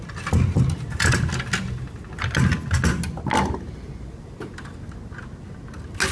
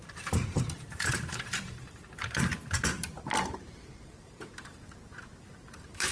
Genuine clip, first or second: first